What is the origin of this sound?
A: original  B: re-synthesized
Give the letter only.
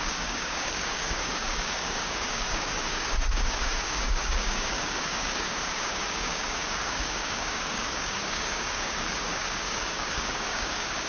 B